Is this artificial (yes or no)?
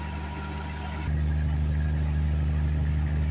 no